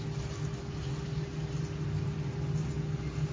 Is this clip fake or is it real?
real